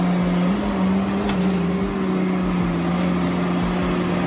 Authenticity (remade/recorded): recorded